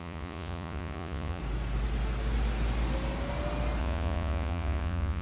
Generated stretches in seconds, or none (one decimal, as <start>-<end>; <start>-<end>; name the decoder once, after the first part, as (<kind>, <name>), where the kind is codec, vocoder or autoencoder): 0.0-1.4 (vocoder, Vocos); 3.8-5.2